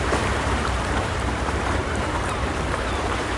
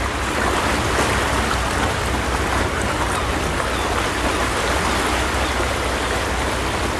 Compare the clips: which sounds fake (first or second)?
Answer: first